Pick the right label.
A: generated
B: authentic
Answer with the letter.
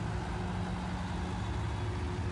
B